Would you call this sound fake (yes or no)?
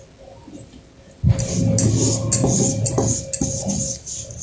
no